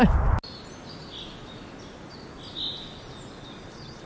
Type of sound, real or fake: real